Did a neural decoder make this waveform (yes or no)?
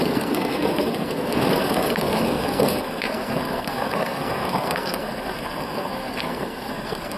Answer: yes